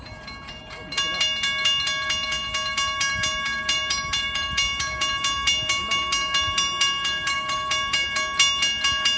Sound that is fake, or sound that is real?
real